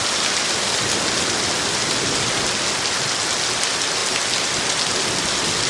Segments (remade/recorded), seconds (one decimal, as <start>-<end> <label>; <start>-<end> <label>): 0.0-5.7 recorded